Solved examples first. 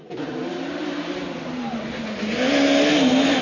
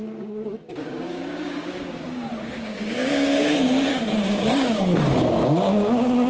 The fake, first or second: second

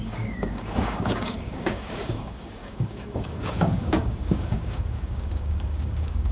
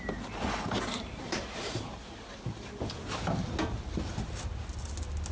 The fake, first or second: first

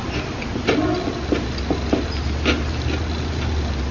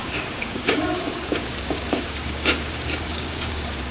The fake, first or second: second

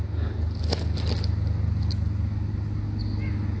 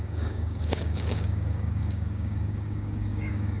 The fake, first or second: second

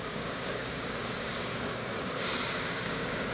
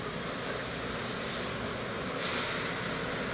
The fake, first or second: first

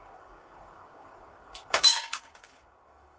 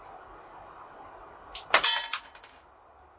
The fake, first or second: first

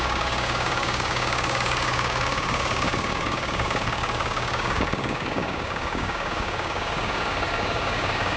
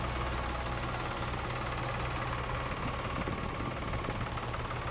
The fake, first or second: first